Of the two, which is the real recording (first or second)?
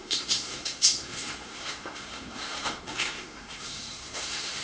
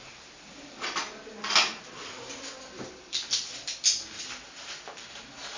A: second